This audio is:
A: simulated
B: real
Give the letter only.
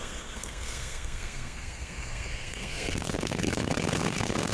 A